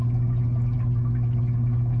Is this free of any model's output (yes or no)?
yes